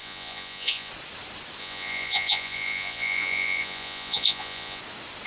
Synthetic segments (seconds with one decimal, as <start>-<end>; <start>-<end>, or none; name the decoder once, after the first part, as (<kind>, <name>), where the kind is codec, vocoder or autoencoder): 0.0-0.9 (vocoder, Vocos); 1.6-4.8